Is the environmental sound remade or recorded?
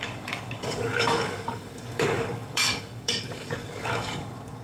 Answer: remade